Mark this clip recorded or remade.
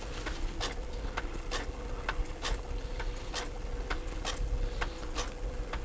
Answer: recorded